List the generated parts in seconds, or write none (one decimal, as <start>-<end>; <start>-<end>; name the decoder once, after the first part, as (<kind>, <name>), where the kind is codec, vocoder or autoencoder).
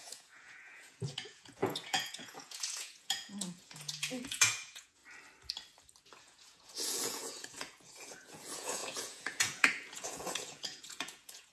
0.0-5.0 (vocoder, Vocos); 6.2-11.5